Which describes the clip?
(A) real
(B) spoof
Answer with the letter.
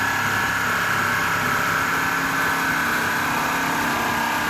A